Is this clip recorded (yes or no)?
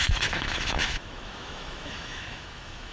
no